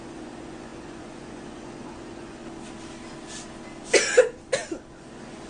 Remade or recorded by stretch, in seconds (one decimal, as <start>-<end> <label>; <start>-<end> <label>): 0.0-2.4 remade; 2.4-4.9 recorded; 4.9-5.5 remade